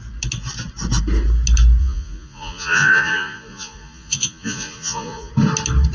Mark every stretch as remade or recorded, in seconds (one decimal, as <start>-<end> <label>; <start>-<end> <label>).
0.0-1.8 recorded; 1.8-5.3 remade; 5.3-5.9 recorded